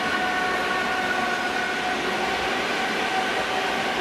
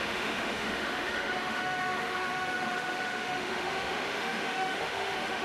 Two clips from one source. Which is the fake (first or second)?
second